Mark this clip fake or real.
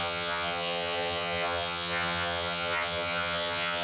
fake